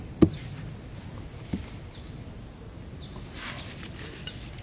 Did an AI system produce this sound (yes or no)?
no